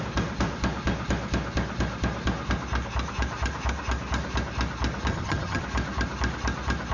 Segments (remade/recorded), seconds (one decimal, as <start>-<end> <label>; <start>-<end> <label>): 0.0-5.1 recorded; 5.1-5.6 remade; 5.6-6.9 recorded